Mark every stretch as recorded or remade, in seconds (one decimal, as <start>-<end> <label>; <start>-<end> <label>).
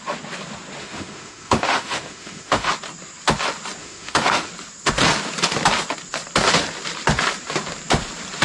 0.0-0.8 recorded; 0.8-2.7 remade; 2.7-3.8 recorded; 3.8-4.5 remade; 4.5-8.4 recorded